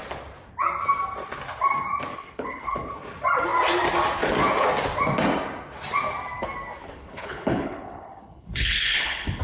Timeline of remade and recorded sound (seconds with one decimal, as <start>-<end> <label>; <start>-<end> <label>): 0.0-2.1 recorded; 2.1-2.9 remade; 2.9-6.8 recorded; 6.8-9.4 remade